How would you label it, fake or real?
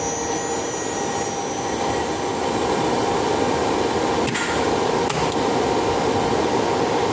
real